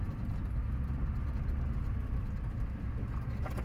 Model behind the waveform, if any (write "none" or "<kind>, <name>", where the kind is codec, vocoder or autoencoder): none